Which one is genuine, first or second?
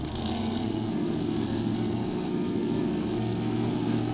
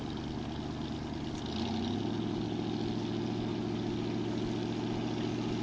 second